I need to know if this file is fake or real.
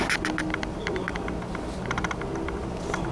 real